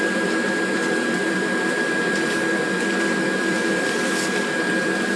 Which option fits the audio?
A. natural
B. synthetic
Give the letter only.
B